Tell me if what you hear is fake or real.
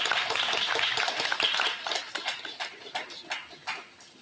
real